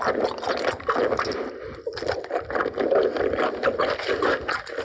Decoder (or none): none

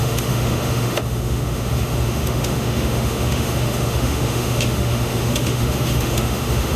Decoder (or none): autoencoder, DAC-VAE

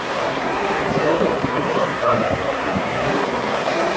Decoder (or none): codec, SNAC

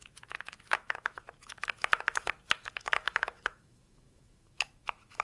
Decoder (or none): autoencoder, DAC-VAE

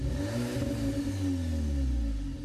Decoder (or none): none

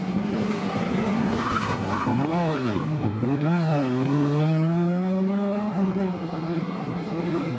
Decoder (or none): codec, SNAC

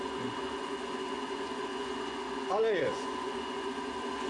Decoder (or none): vocoder, Vocos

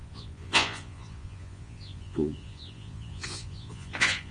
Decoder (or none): vocoder, Vocos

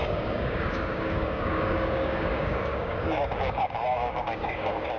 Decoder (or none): codec, DAC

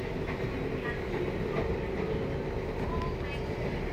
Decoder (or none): none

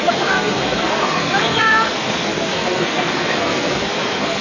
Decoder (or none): codec, SNAC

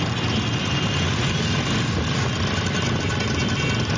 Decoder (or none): none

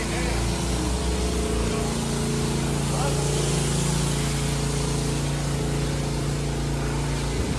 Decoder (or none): none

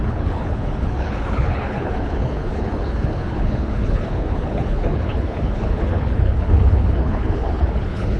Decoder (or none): codec, HILCodec